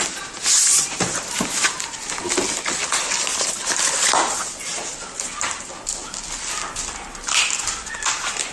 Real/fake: real